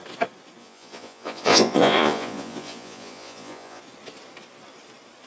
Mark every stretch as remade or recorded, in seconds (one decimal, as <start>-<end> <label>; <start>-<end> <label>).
0.0-0.6 recorded; 0.6-3.8 remade; 3.8-5.3 recorded